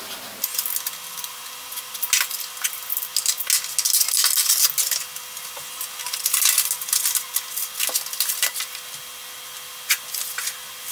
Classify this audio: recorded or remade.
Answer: recorded